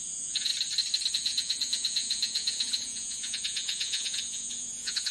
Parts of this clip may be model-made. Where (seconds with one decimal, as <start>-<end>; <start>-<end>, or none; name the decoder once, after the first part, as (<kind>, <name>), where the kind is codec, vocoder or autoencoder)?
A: 0.0-0.5 (vocoder, Vocos); 1.1-5.1